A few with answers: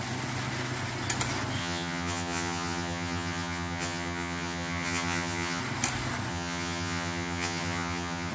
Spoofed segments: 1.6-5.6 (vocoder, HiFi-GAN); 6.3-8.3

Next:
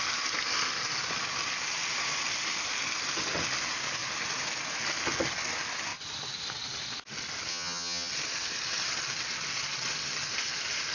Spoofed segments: 7.5-8.1 (vocoder, HiFi-GAN)

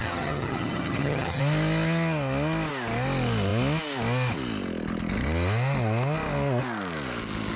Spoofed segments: 0.0-1.4 (vocoder, HiFi-GAN)

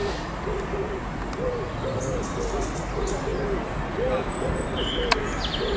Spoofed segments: none

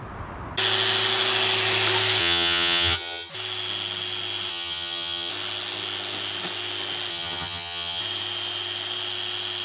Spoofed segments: 2.2-3.3 (vocoder, HiFi-GAN); 4.5-5.3; 7.1-8.0

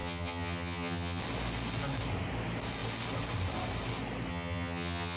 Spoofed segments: 0.0-1.2 (vocoder, HiFi-GAN); 4.3-5.2

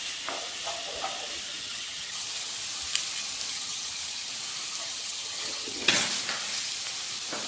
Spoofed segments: 1.6-2.5 (vocoder, HiFi-GAN); 3.5-4.3; 4.8-6.1

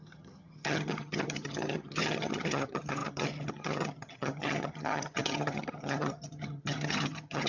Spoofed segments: 0.0-7.5 (vocoder, HiFi-GAN)